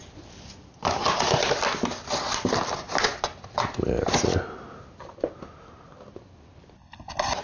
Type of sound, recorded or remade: recorded